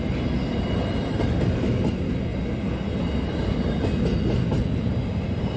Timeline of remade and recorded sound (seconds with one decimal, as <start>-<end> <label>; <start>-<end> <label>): 0.0-5.6 recorded